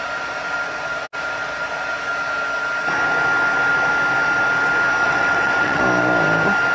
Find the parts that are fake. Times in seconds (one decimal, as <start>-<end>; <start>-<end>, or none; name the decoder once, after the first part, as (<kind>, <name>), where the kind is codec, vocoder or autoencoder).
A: 5.0-5.8 (vocoder, WaveNeXt)